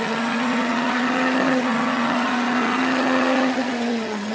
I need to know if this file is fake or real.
fake